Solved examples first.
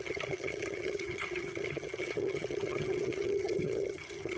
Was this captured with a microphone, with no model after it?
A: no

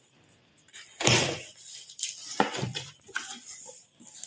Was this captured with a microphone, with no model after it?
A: yes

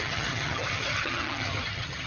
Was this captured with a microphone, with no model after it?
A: no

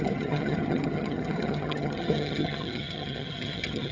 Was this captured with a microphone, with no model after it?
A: no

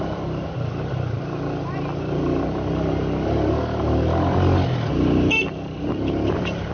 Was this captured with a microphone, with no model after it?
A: yes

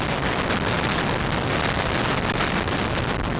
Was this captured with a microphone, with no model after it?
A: yes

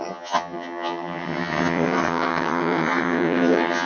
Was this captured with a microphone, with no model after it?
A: no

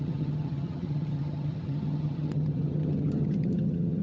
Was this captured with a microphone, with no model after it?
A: no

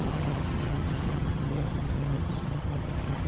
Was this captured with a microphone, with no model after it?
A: no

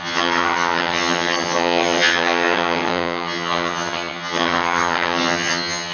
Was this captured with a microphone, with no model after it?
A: no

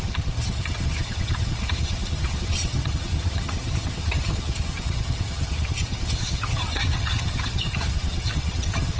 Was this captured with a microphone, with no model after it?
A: no